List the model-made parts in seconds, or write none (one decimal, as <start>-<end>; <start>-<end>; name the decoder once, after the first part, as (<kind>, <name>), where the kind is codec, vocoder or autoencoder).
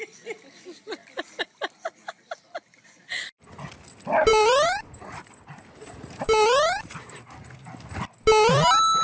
4.3-7.7 (vocoder, BigVGAN v2)